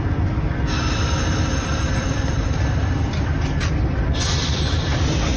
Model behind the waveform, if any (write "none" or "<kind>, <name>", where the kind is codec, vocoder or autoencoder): vocoder, BigVGAN v2